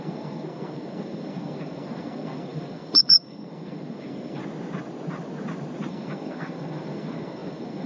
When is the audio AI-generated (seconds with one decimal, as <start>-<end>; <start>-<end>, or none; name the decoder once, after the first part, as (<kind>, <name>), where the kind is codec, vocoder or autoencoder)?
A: 0.0-4.4 (codec, SNAC); 5.9-7.9

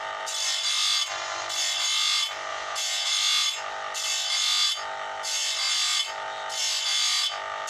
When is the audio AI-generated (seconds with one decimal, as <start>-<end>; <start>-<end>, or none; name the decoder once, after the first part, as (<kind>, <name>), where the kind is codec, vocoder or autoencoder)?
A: 2.5-3.1 (vocoder, Vocos)